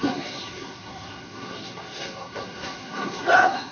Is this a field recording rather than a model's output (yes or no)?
no